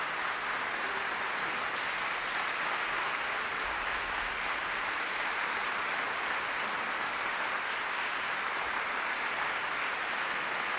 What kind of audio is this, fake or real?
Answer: real